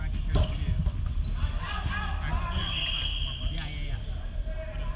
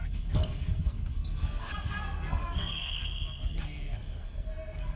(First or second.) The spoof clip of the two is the second